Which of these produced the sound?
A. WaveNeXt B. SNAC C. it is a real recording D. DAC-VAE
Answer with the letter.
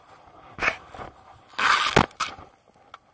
C